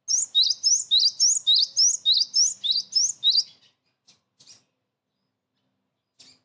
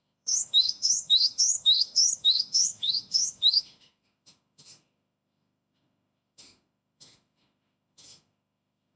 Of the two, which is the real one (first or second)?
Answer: first